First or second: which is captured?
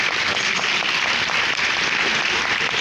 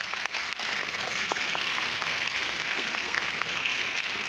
first